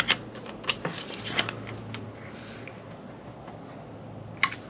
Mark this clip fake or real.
real